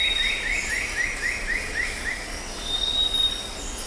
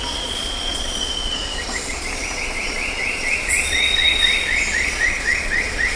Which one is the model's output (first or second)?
second